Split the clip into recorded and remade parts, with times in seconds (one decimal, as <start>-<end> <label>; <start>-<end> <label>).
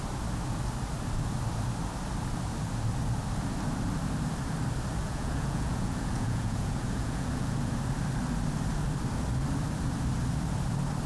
0.0-5.0 recorded; 5.0-7.7 remade; 7.7-11.1 recorded